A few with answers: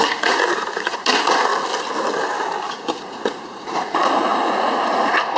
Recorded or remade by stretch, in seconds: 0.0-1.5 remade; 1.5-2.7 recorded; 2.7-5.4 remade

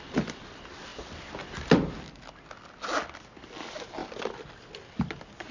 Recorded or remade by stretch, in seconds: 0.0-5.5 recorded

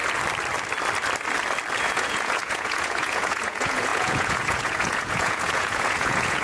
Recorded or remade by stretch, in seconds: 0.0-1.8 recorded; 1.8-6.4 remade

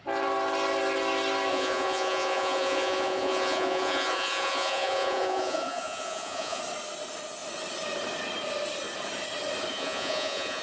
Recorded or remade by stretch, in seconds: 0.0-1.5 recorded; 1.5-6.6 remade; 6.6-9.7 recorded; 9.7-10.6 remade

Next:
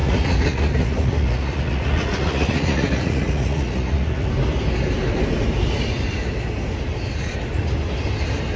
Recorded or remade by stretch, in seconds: 0.0-4.3 remade; 4.3-8.6 recorded

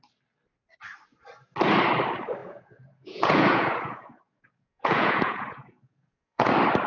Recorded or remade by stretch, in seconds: 0.0-2.4 recorded; 2.4-6.5 remade; 6.5-6.9 recorded